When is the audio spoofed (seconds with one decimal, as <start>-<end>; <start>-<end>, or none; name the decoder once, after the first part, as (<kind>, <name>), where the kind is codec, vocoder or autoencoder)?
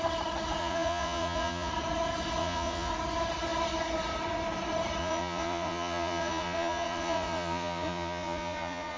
0.6-1.7 (vocoder, Vocos); 2.4-2.9; 5.0-9.0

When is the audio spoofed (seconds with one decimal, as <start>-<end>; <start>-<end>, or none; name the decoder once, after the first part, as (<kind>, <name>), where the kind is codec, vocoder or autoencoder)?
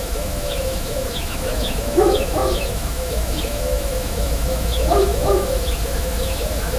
0.0-6.8 (autoencoder, DAC-VAE)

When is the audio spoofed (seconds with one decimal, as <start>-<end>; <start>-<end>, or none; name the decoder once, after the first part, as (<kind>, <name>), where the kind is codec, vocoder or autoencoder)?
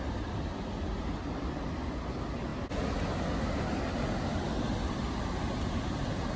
none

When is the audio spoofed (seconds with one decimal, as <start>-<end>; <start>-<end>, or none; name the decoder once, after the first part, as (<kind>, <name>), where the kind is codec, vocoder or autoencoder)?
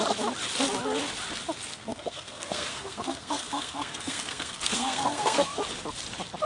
1.7-5.6 (codec, SNAC)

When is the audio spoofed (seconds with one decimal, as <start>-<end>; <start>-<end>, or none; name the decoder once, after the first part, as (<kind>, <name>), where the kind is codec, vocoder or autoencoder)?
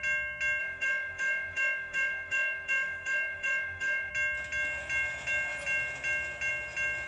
0.6-4.1 (autoencoder, DAC-VAE)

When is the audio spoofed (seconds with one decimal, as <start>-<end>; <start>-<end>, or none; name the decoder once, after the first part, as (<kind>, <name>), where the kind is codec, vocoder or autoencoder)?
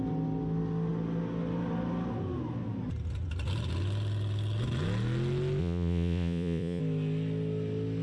5.6-6.8 (vocoder, Vocos)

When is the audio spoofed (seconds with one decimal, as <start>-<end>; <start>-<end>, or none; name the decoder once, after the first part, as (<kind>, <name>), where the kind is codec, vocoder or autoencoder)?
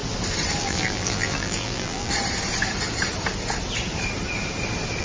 0.6-2.1 (vocoder, BigVGAN v2)